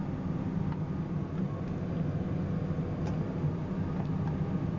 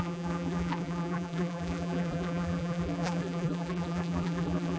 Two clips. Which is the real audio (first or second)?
first